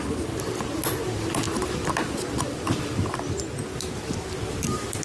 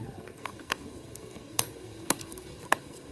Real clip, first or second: first